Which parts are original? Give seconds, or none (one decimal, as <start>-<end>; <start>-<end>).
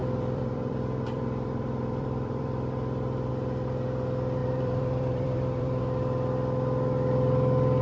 3.3-4.4; 5.8-7.8